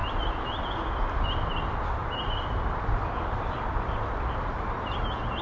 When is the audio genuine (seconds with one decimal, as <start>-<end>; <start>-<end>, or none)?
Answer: 0.0-2.0